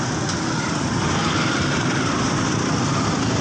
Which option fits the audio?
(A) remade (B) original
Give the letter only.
B